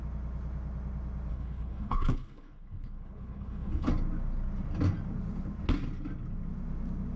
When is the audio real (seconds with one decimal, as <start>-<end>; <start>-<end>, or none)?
0.0-1.3; 3.9-7.2